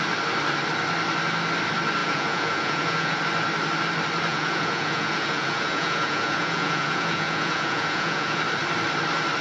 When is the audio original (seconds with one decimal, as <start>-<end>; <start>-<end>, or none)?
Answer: 0.0-2.0; 3.2-4.3; 8.4-9.4